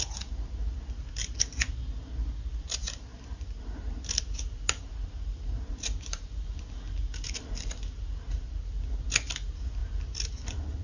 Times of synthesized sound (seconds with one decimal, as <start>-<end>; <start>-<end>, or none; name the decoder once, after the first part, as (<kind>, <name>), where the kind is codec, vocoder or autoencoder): none